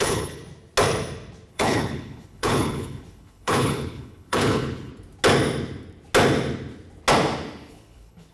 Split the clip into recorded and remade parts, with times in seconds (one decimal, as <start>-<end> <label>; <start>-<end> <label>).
0.0-0.4 remade; 0.4-1.5 recorded; 1.5-4.9 remade; 4.9-7.7 recorded; 7.7-8.3 remade